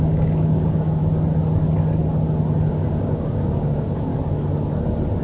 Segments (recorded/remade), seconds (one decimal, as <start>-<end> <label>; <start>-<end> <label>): 0.0-1.0 remade; 1.0-2.7 recorded; 2.7-4.1 remade; 4.1-5.2 recorded